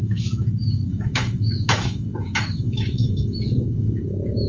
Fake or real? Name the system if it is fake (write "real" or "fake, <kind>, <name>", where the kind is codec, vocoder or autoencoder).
fake, autoencoder, DAC-VAE